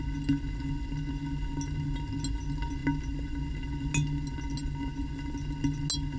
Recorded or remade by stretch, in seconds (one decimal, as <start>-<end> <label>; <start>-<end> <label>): 0.0-6.2 recorded